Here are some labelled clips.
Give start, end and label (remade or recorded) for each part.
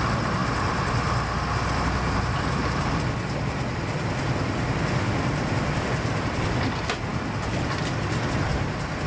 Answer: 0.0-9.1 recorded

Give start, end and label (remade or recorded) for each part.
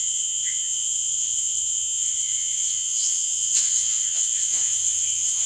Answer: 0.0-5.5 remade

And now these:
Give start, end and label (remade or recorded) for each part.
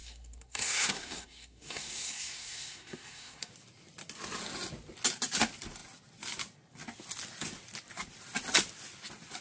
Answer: 0.0-3.5 remade; 3.5-9.4 recorded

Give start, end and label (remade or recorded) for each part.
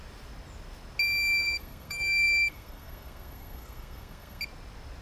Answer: 0.0-1.4 recorded; 1.4-4.4 remade; 4.4-5.0 recorded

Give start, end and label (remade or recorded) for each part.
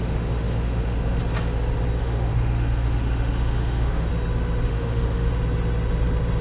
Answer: 0.0-1.2 remade; 1.2-2.0 recorded; 2.0-4.1 remade; 4.1-4.7 recorded; 4.7-5.3 remade; 5.3-6.4 recorded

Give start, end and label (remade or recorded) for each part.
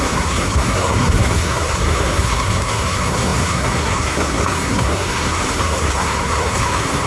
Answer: 0.0-7.1 remade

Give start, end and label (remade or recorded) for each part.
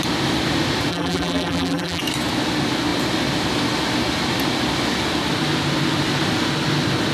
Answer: 0.0-0.9 recorded; 0.9-2.0 remade; 2.0-7.1 recorded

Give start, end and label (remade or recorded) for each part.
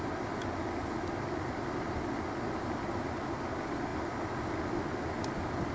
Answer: 0.0-5.7 recorded